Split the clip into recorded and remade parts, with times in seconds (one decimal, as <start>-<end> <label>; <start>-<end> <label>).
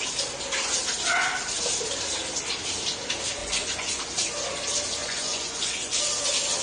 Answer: 0.0-3.4 recorded; 3.4-4.0 remade; 4.0-5.0 recorded; 5.0-6.0 remade; 6.0-6.6 recorded